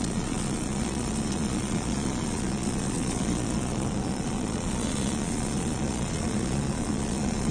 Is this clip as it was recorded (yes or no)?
no